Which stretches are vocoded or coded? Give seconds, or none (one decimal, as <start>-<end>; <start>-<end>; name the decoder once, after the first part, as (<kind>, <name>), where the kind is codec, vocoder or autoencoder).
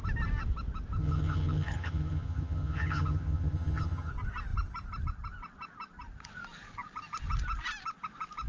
1.0-4.1 (vocoder, HiFi-GAN)